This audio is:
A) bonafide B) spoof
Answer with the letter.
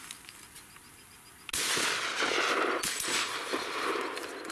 A